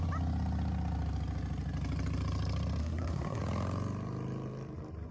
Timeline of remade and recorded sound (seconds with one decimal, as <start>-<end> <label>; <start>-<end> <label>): 0.0-2.8 recorded; 2.8-3.4 remade; 3.4-5.1 recorded